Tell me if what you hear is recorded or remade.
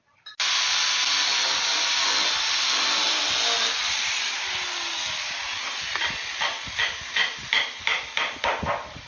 recorded